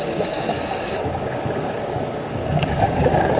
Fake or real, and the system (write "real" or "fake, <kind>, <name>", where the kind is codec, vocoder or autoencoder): fake, codec, DAC